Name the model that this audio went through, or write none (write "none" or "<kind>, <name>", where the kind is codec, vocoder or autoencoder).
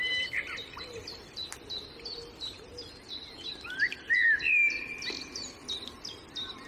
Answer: none